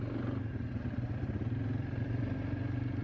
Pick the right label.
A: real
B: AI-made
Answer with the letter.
A